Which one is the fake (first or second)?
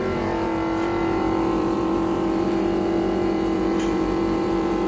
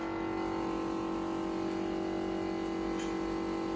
first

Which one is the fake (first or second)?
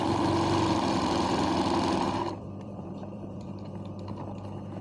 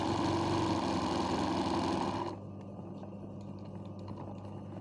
first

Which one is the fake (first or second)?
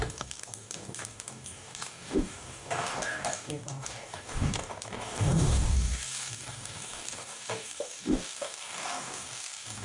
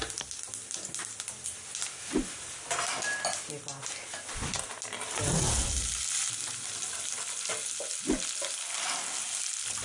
first